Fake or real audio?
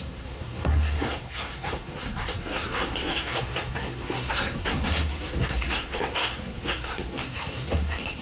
fake